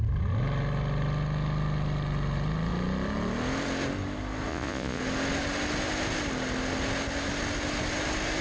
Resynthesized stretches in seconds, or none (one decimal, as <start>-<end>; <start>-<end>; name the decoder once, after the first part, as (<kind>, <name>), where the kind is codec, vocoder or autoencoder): 4.5-5.0 (vocoder, Vocos)